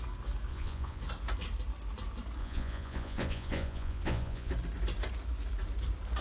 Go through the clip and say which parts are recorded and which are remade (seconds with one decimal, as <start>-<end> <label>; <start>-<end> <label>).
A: 0.0-0.5 recorded; 0.5-1.0 remade; 1.0-2.4 recorded; 2.4-4.5 remade; 4.5-6.2 recorded